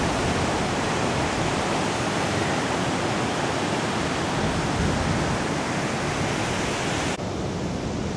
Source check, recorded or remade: recorded